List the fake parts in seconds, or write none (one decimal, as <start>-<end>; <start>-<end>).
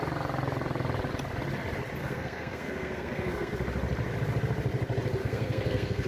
2.0-3.5; 5.2-6.1